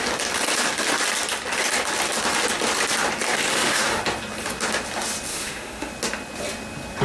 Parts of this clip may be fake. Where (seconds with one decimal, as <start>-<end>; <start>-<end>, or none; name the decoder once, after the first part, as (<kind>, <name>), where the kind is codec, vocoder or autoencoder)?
3.5-4.0 (autoencoder, DAC-VAE); 5.3-5.9

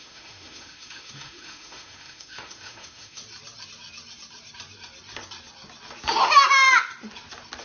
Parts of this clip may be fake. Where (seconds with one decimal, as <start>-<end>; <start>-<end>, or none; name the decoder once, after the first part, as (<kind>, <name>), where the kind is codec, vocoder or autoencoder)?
0.0-3.2 (autoencoder, DAC-VAE)

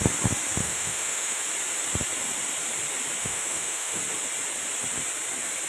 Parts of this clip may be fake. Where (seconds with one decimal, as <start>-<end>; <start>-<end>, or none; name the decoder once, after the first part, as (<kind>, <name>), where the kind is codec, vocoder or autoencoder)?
0.6-1.4 (autoencoder, DAC-VAE); 3.2-4.0

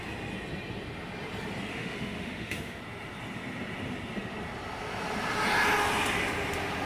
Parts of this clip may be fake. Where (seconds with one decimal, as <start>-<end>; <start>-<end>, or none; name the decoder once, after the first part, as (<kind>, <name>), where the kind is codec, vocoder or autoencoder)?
1.7-2.8 (autoencoder, DAC-VAE)

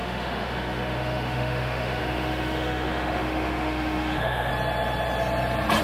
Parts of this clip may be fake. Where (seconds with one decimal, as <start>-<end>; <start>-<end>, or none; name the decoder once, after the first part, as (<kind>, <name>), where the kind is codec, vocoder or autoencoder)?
0.0-4.5 (autoencoder, DAC-VAE)

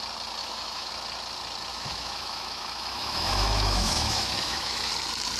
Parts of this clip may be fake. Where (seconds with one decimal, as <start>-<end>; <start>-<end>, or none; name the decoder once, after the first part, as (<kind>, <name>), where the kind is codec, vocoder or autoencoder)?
0.4-0.9 (autoencoder, DAC-VAE); 1.7-4.9